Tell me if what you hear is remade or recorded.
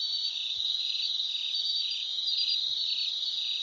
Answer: recorded